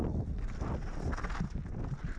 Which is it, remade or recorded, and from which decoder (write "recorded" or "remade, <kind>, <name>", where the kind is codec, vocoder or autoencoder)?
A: recorded